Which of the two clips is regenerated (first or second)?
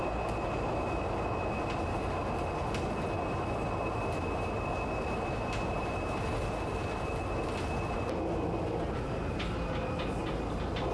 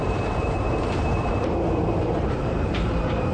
second